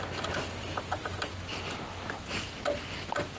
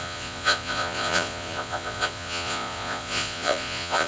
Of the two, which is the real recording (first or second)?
first